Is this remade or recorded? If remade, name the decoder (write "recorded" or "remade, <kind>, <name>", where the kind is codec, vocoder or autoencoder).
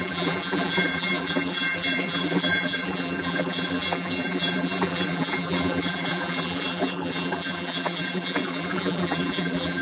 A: remade, vocoder, BigVGAN v2